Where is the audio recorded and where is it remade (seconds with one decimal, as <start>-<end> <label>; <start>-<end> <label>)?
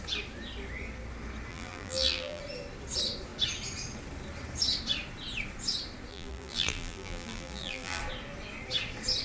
0.0-1.5 recorded; 1.5-2.4 remade; 2.4-6.1 recorded; 6.1-8.0 remade; 8.0-9.2 recorded